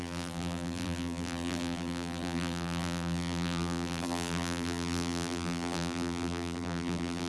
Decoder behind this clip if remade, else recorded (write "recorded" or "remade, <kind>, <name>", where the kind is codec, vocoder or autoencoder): remade, vocoder, BigVGAN v2